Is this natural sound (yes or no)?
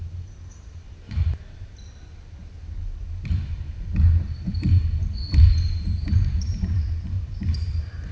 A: no